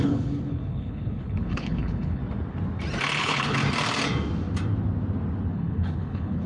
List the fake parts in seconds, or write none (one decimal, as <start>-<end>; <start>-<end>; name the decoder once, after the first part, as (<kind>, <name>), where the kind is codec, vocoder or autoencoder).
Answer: 0.0-2.2 (codec, HILCodec); 3.2-3.6; 5.5-6.5